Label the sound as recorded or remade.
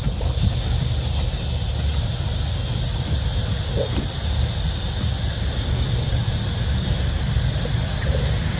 recorded